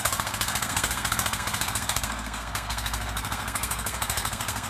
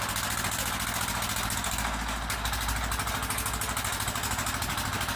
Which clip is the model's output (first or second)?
first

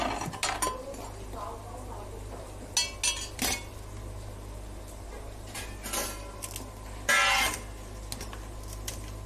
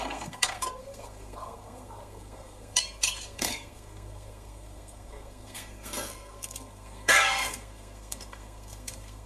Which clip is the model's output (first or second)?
second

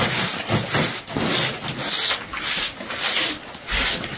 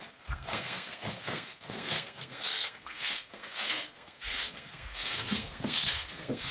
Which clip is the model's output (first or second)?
second